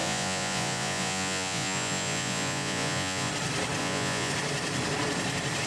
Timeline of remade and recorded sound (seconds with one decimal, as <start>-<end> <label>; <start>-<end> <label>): 0.0-3.3 remade; 3.3-3.8 recorded; 3.8-4.3 remade; 4.3-5.7 recorded